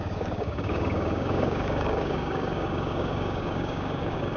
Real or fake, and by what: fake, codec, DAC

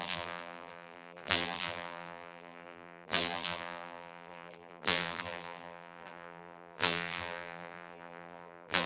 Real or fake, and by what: fake, vocoder, BigVGAN v2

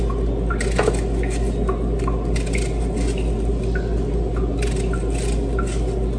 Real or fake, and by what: real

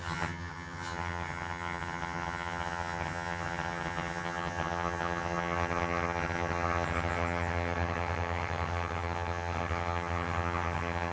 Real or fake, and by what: fake, vocoder, HiFi-GAN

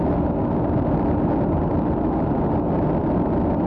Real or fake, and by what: real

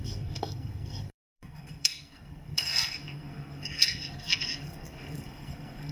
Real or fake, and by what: fake, codec, SNAC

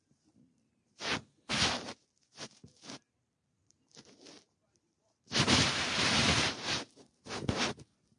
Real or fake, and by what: fake, vocoder, BigVGAN v2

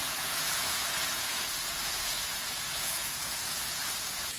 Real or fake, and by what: fake, vocoder, Vocos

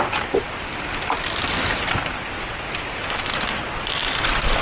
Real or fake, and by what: real